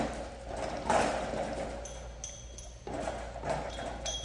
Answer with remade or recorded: recorded